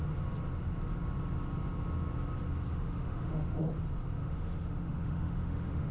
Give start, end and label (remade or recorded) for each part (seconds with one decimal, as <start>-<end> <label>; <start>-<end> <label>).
0.0-2.7 recorded; 2.7-3.6 remade; 3.6-4.2 recorded; 4.2-5.9 remade